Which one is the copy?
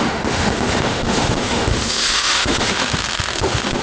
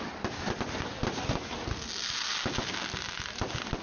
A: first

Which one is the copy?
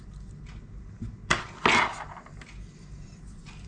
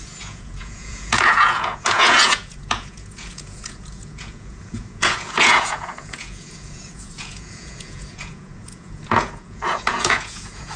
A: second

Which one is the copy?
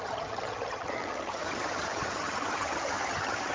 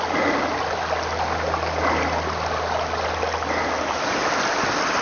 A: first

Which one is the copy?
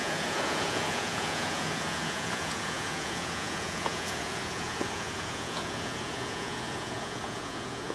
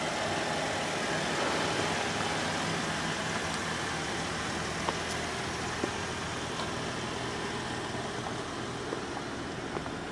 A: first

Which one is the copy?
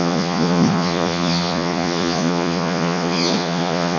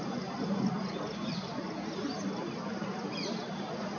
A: first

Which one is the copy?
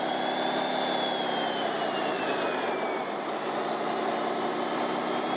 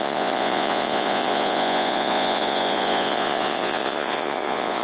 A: second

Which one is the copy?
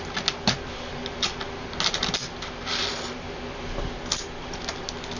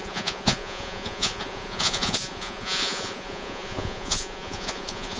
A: second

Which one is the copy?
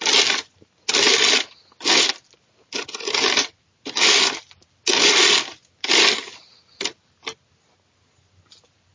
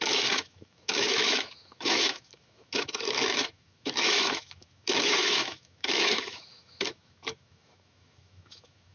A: second